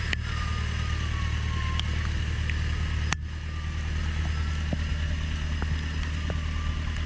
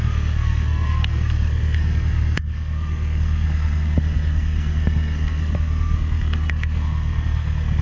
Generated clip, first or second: second